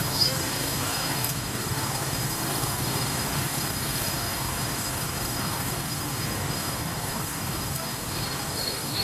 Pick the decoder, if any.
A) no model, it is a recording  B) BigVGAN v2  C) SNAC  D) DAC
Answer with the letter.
D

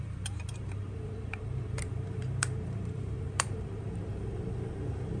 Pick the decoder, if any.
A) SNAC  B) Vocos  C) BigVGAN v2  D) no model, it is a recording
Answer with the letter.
C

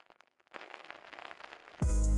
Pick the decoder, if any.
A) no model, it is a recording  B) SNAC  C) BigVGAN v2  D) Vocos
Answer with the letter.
B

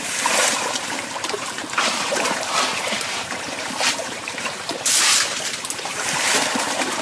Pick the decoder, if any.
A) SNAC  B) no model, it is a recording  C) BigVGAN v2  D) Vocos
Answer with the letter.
C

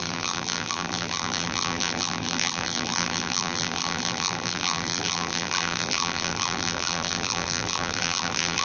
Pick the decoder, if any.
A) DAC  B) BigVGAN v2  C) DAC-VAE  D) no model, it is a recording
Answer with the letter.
B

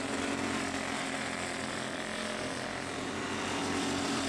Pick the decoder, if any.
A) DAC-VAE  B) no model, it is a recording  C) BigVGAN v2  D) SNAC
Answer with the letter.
B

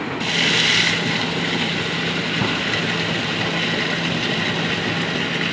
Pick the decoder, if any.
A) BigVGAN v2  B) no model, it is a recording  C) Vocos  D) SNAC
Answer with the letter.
B